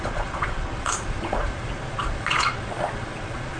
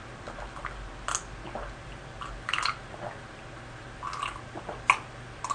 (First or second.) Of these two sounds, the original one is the second